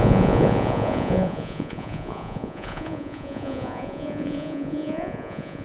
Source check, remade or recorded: remade